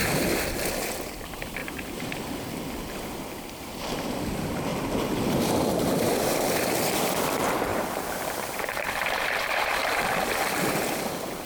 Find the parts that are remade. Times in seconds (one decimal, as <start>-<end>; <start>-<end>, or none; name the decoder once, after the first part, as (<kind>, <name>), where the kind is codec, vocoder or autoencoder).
1.6-2.1 (vocoder, BigVGAN v2); 4.7-5.5; 7.7-10.7